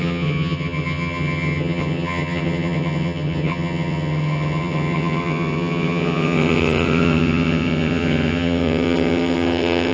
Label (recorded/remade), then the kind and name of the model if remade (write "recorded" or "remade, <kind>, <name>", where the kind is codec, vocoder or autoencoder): remade, vocoder, HiFi-GAN